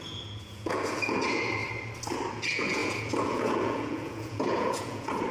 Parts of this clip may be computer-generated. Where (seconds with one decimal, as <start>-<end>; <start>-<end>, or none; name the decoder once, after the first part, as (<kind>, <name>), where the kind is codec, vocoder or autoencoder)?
0.0-1.6 (vocoder, Vocos); 2.3-5.3